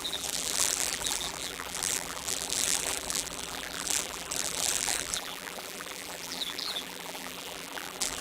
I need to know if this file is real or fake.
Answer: fake